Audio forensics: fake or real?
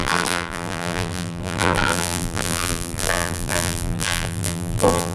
fake